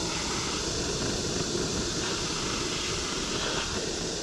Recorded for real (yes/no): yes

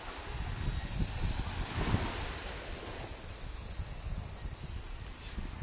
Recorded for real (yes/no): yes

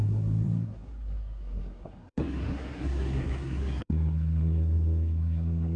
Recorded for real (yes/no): no